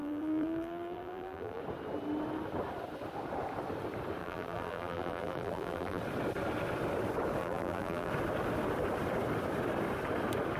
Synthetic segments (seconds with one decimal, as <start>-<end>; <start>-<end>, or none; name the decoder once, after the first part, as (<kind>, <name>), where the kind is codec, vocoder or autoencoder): 0.0-1.6 (vocoder, BigVGAN v2); 4.2-6.0; 7.4-8.1